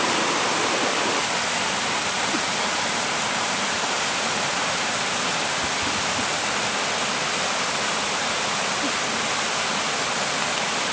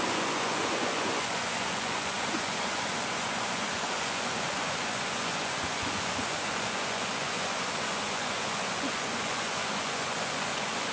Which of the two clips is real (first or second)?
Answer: first